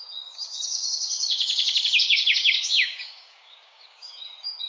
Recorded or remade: remade